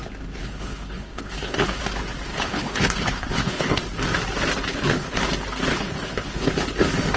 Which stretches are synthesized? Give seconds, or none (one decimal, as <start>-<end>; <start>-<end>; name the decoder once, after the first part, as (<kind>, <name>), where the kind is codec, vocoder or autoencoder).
0.4-1.8 (codec, HILCodec); 2.3-3.8; 4.7-5.2; 5.7-6.5